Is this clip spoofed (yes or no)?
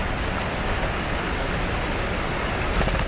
no